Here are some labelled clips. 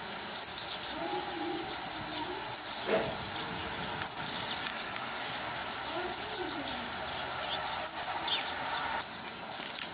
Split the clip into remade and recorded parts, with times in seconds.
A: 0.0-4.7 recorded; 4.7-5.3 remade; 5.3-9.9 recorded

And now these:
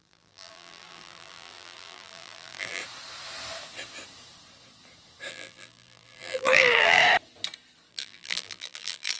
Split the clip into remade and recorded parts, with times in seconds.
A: 0.0-2.8 remade; 2.8-5.3 recorded; 5.3-7.0 remade; 7.0-7.9 recorded; 7.9-9.2 remade

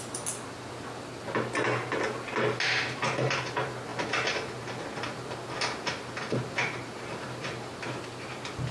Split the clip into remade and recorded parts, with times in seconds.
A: 0.0-8.7 recorded

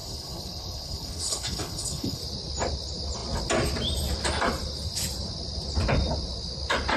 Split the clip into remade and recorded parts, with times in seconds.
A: 0.0-2.2 remade; 2.2-7.0 recorded

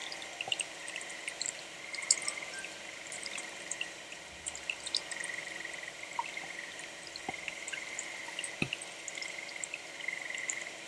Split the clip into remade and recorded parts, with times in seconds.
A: 0.0-0.5 recorded; 0.5-8.2 remade; 8.2-9.1 recorded; 9.1-10.9 remade

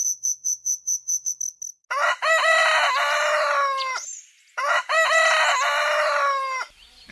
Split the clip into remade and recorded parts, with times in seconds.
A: 0.0-1.4 remade; 1.4-7.1 recorded